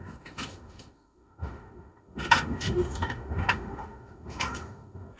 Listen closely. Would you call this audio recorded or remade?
remade